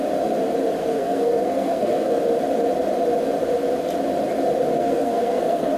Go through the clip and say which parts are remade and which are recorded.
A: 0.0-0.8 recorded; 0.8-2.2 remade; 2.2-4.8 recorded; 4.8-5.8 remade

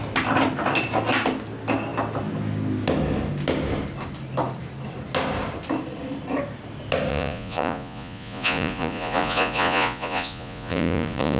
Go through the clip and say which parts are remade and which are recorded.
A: 0.0-7.1 recorded; 7.1-11.4 remade

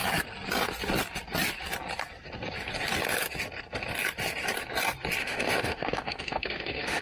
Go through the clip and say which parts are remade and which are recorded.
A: 0.0-5.2 recorded; 5.2-7.0 remade

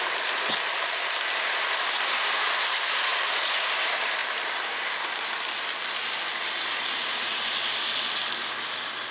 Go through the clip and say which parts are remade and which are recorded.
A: 0.0-9.1 recorded